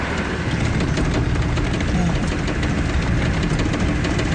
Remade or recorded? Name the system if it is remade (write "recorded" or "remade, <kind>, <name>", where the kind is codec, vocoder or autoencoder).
recorded